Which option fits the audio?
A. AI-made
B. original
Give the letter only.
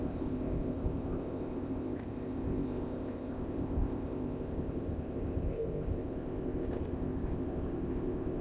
A